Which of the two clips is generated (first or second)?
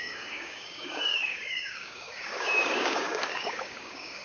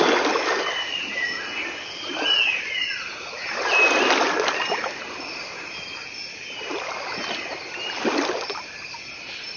first